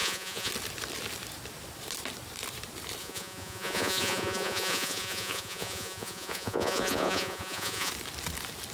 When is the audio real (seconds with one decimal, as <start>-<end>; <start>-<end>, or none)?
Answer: 0.5-3.0; 7.9-8.7